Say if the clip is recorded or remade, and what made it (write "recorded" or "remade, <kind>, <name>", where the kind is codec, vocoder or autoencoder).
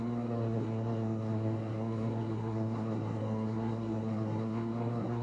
remade, codec, SNAC